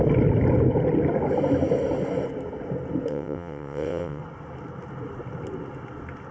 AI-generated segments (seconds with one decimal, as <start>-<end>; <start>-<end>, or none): 3.1-4.2